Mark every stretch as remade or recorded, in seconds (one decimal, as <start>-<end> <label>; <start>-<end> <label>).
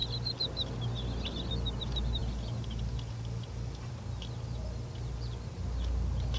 0.0-2.2 recorded; 2.2-3.9 remade; 3.9-6.4 recorded